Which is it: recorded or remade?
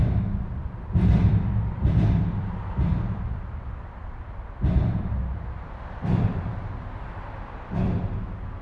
remade